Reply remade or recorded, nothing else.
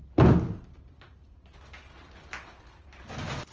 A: recorded